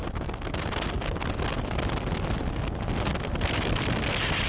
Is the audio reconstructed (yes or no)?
no